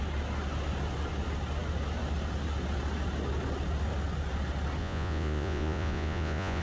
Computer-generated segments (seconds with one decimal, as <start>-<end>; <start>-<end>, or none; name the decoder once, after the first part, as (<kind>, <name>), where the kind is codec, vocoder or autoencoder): 4.8-6.6 (vocoder, Vocos)